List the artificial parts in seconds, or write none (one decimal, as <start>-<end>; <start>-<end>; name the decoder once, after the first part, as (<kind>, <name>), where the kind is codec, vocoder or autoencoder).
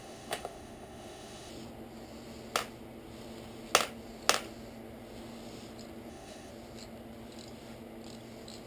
0.0-1.5 (autoencoder, DAC-VAE); 6.1-6.5